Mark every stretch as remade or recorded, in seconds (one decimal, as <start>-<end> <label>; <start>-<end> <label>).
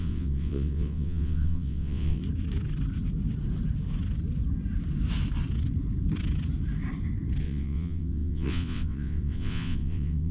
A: 0.0-2.2 remade; 2.2-7.4 recorded; 7.4-10.3 remade